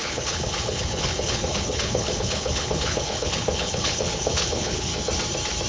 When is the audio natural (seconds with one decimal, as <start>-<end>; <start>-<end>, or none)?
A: 4.9-5.7